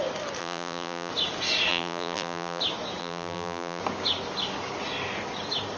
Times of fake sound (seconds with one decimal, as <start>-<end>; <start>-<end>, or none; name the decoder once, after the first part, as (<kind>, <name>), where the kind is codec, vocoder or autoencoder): 0.4-1.1 (vocoder, BigVGAN v2); 1.7-2.6; 3.0-3.8